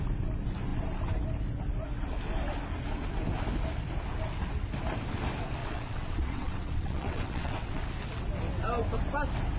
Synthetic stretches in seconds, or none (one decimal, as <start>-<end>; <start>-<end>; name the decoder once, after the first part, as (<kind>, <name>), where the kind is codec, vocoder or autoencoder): 5.6-7.8 (vocoder, WaveNeXt)